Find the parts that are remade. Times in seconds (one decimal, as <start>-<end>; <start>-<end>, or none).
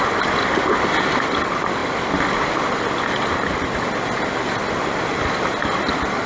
none